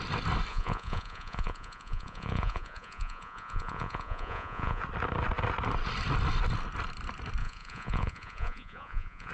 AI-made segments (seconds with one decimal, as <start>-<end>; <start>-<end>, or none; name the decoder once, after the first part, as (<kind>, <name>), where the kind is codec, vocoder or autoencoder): 0.5-4.8 (vocoder, Vocos); 7.4-9.3